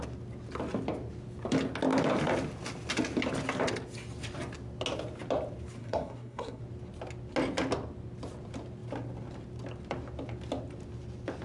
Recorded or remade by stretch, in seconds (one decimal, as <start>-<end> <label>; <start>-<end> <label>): 0.0-5.8 recorded; 5.8-6.6 remade; 6.6-11.4 recorded